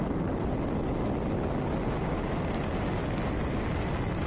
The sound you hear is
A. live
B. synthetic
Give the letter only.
A